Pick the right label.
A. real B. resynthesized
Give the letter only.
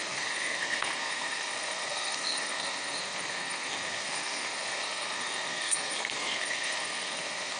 B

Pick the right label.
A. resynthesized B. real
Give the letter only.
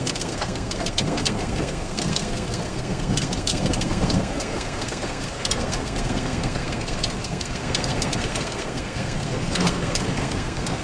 A